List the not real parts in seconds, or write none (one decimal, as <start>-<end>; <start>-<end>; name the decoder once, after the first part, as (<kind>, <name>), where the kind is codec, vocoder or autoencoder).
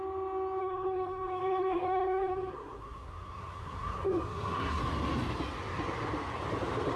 0.6-4.8 (codec, SNAC)